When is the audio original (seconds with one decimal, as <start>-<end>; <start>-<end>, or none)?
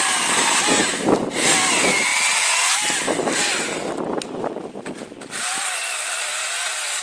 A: 0.0-7.0